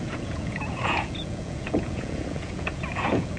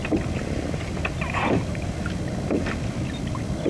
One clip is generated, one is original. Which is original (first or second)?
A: second